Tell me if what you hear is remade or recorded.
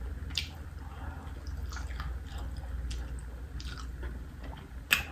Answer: recorded